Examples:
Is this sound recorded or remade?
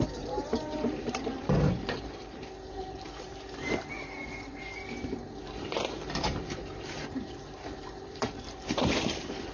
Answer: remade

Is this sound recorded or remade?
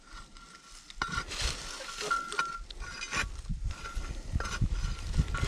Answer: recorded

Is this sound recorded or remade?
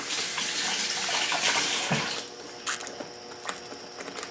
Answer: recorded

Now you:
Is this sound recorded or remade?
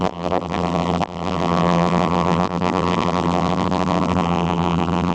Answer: remade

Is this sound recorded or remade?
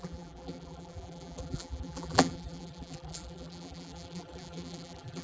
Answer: remade